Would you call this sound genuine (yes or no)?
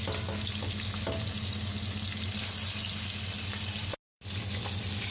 yes